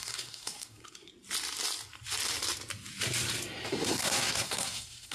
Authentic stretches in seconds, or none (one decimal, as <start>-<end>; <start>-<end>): 1.1-3.7